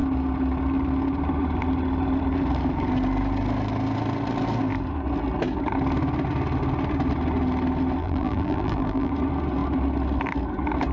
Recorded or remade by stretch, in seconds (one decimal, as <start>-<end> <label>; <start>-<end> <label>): 0.0-8.0 recorded; 8.0-9.1 remade; 9.1-10.9 recorded